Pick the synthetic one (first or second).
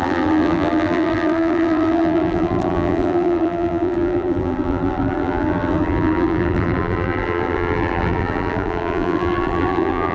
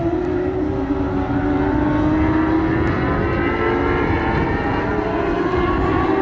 first